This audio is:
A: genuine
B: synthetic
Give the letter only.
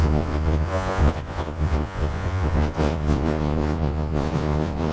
B